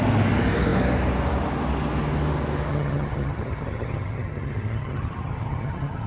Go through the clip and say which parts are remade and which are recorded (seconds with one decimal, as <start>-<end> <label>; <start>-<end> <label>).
0.0-2.7 recorded; 2.7-6.1 remade